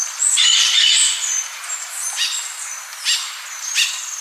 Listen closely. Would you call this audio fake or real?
real